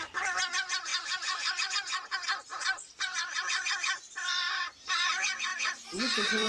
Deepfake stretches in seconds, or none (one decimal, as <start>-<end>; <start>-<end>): 0.9-1.7; 2.5-4.8; 5.5-6.5